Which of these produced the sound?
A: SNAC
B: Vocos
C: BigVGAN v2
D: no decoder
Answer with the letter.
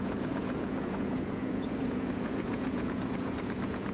B